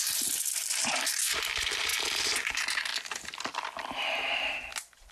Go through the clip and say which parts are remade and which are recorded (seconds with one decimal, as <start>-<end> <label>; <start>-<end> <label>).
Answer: 0.0-2.9 recorded; 2.9-4.0 remade; 4.0-5.1 recorded